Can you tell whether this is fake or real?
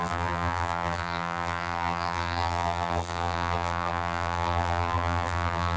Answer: fake